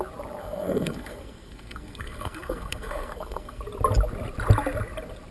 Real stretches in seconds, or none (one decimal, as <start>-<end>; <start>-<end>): 0.0-0.4; 3.6-5.3